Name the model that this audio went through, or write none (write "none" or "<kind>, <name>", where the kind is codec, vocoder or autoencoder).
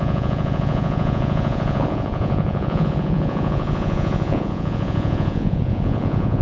vocoder, Vocos